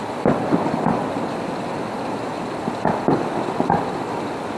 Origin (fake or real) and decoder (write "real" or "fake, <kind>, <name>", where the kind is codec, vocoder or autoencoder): real